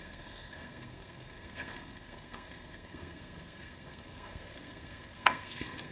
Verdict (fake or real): fake